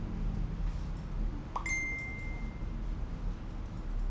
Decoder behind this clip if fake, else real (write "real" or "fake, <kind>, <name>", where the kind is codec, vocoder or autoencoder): real